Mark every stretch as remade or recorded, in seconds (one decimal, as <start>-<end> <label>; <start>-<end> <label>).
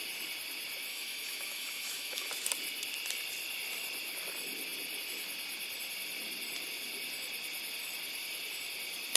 0.0-0.9 recorded; 0.9-2.3 remade; 2.3-9.2 recorded